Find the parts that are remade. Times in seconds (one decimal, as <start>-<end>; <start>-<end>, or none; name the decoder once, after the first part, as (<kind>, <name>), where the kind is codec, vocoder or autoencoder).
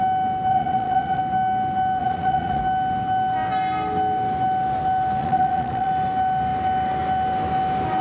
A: 0.5-1.2 (vocoder, Vocos); 2.0-2.6; 5.2-5.9